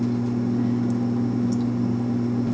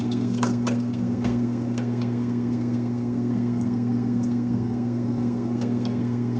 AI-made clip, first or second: second